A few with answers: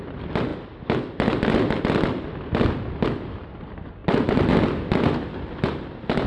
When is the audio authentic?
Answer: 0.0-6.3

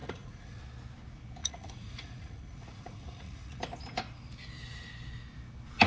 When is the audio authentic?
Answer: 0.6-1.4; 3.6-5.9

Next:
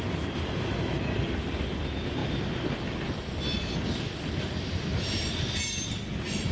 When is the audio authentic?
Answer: 0.0-6.5

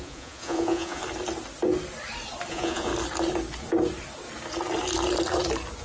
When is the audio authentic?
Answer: 1.0-2.5; 2.9-5.8